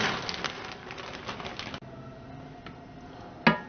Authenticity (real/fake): real